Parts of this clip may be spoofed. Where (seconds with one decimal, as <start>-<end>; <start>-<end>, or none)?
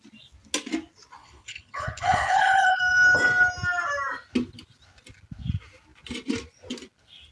1.2-2.8